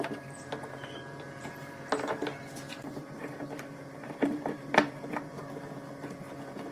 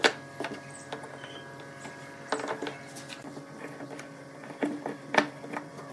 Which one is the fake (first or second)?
first